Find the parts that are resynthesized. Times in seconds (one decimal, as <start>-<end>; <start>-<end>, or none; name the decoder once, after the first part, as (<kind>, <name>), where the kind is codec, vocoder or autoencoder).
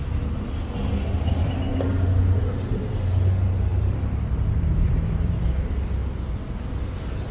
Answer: 3.7-5.4 (vocoder, BigVGAN v2); 6.0-6.7